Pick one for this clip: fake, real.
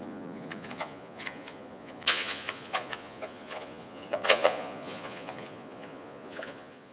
fake